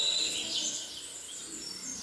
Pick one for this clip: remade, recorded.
recorded